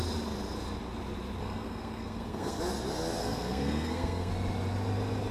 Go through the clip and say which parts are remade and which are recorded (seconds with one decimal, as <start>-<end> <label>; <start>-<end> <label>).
0.0-1.4 recorded; 1.4-2.6 remade; 2.6-3.2 recorded; 3.2-4.3 remade; 4.3-5.3 recorded